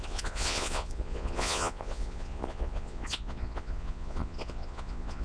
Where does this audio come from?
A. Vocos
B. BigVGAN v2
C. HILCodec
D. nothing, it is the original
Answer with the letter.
A